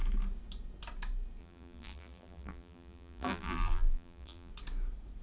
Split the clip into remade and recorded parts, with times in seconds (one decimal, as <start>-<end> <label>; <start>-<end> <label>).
0.0-1.4 recorded; 1.4-4.5 remade; 4.5-5.2 recorded